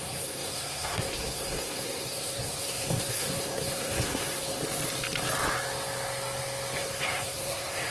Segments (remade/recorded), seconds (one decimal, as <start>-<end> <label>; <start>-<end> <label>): 0.0-4.6 remade; 4.6-6.8 recorded; 6.8-7.9 remade